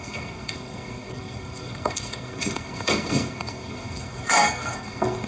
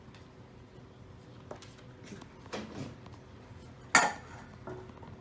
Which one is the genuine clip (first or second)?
second